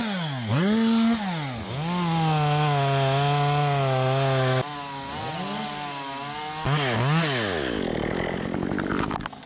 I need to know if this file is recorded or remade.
recorded